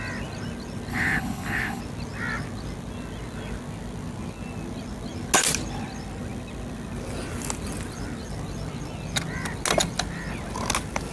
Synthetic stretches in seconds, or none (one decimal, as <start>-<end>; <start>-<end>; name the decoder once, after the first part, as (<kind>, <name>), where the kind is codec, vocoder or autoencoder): 0.9-1.8 (codec, HILCodec)